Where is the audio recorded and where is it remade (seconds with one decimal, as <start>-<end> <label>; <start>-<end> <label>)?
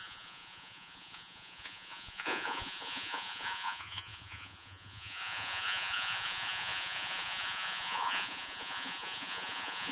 0.0-9.9 remade